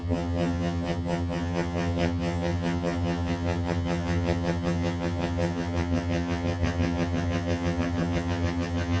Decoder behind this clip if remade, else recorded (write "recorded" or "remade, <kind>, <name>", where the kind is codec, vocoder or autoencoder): remade, vocoder, HiFi-GAN